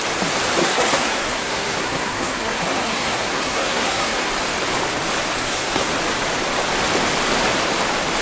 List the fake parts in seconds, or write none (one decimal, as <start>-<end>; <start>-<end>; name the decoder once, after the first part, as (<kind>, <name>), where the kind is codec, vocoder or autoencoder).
0.6-4.3 (codec, SNAC); 5.4-5.9